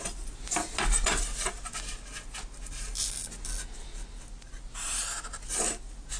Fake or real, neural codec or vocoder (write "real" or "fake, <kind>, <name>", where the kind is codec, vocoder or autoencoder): real